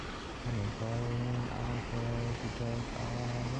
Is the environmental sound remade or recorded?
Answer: recorded